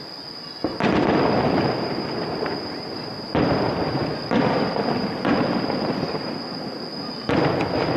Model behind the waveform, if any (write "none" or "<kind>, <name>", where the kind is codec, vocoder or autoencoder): none